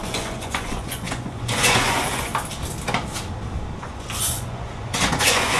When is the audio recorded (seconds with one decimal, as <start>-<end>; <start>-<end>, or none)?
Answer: 2.3-3.8